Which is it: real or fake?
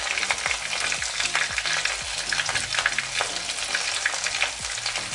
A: real